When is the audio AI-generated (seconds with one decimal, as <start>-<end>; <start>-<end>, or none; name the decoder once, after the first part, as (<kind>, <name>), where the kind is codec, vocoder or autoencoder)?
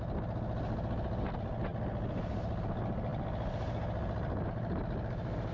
none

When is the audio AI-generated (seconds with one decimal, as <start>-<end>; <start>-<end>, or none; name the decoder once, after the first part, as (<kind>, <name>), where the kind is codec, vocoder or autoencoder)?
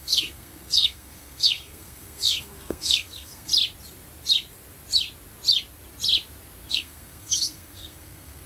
0.0-3.5 (codec, SNAC); 6.7-8.5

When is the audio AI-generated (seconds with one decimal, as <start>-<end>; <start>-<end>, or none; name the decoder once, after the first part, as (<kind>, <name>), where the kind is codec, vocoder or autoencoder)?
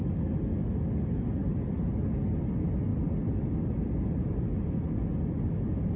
1.4-2.1 (vocoder, BigVGAN v2); 2.9-4.5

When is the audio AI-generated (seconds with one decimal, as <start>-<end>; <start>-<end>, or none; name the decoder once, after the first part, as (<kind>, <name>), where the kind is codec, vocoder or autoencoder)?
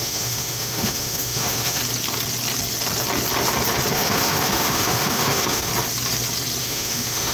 0.0-1.8 (autoencoder, DAC-VAE); 3.9-5.7; 6.6-7.3